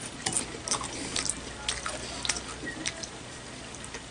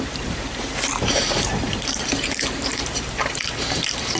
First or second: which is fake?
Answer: second